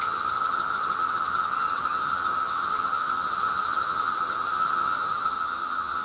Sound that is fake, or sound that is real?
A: fake